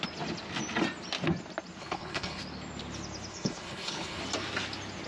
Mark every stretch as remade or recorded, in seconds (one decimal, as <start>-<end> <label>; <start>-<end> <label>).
0.0-1.8 recorded; 1.8-2.4 remade; 2.4-3.3 recorded; 3.3-4.2 remade; 4.2-5.1 recorded